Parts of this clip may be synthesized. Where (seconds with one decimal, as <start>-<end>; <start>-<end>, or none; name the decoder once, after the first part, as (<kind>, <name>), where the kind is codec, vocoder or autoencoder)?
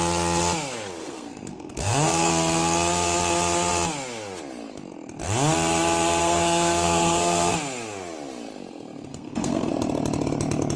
1.0-2.3 (codec, SNAC); 6.2-7.5; 9.1-9.7